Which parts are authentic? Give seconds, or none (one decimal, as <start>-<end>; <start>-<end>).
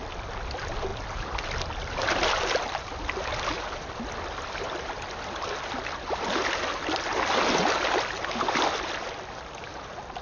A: 0.0-10.2